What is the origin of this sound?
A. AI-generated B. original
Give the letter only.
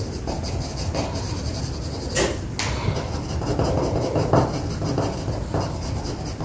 B